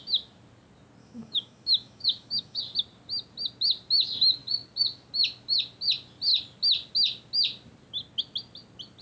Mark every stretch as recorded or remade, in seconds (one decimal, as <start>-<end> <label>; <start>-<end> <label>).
0.0-1.0 recorded; 1.0-2.6 remade; 2.6-9.0 recorded